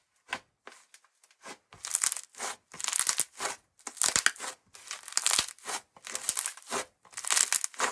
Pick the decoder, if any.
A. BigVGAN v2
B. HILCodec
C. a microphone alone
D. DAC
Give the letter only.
C